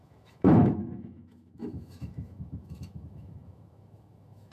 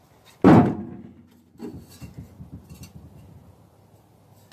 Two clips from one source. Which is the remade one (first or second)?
first